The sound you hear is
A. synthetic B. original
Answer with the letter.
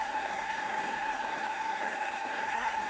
A